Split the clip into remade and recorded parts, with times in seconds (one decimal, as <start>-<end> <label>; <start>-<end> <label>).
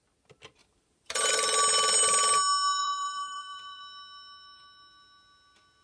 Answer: 0.0-0.6 recorded; 0.6-1.3 remade; 1.3-2.8 recorded; 2.8-3.8 remade; 3.8-5.8 recorded